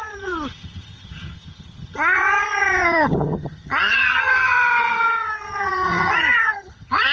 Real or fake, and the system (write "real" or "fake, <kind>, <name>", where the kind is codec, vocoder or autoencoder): fake, vocoder, HiFi-GAN